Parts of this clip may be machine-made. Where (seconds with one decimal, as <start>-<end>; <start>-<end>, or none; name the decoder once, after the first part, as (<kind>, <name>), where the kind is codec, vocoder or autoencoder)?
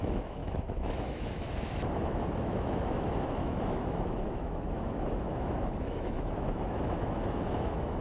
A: 0.0-8.0 (autoencoder, DAC-VAE)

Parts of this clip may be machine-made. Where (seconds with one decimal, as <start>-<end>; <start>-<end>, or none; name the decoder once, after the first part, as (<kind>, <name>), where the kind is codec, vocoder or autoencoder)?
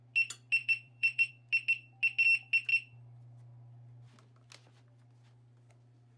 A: 0.6-1.3 (vocoder, BigVGAN v2)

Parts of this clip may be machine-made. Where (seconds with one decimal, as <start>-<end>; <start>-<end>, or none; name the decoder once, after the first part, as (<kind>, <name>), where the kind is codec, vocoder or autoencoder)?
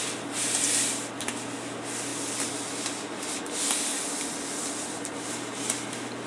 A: none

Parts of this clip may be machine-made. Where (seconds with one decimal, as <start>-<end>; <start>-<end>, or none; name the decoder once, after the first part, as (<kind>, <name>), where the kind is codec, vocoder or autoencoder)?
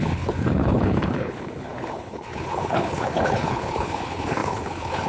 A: 0.0-5.1 (codec, HILCodec)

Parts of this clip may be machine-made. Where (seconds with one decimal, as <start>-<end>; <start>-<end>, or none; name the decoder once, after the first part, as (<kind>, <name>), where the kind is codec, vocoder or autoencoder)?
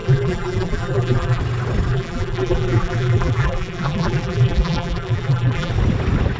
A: 0.0-1.4 (vocoder, BigVGAN v2); 1.9-5.7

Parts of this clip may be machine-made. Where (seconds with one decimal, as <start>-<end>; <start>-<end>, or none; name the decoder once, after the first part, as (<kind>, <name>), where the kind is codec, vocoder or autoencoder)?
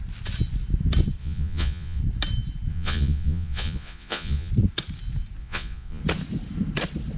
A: 1.2-2.0 (vocoder, Vocos); 2.7-4.5; 5.4-6.0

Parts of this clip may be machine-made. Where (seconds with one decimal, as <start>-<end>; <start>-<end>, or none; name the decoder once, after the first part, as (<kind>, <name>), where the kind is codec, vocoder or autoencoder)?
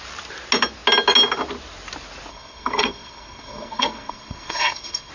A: 2.3-5.1 (codec, SNAC)